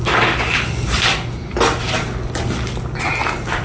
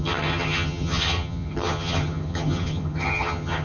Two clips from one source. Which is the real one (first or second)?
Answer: first